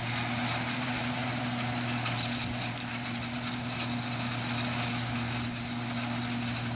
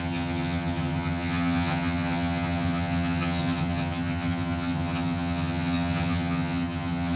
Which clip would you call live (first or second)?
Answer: first